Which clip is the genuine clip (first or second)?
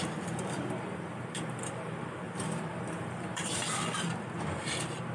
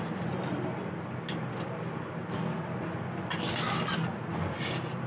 second